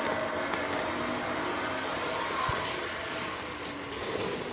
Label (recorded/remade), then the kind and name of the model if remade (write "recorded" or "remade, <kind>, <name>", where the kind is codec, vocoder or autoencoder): remade, vocoder, BigVGAN v2